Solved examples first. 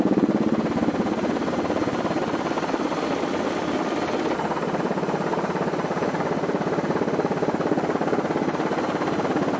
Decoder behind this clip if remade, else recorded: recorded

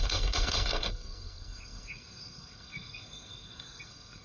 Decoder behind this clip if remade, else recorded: remade, codec, SNAC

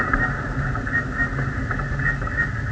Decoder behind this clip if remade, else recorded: recorded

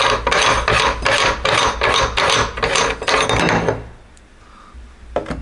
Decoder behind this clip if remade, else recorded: recorded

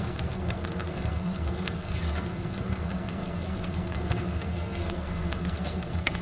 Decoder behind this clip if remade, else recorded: remade, codec, SNAC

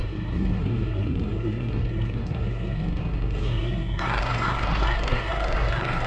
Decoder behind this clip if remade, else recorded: remade, codec, SNAC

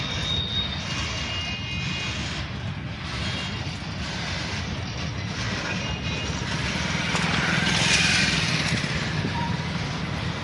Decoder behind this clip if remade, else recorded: recorded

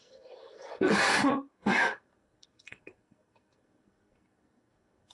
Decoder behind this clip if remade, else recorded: remade, codec, SNAC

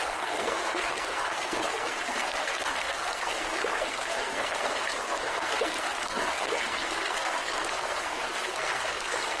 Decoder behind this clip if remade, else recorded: remade, codec, SNAC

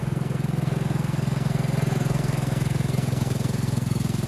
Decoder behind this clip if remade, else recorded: remade, codec, SNAC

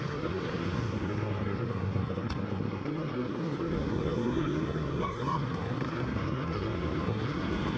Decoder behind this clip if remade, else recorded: remade, codec, SNAC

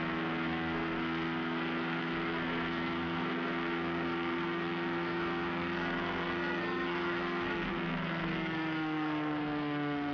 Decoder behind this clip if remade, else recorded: remade, codec, SNAC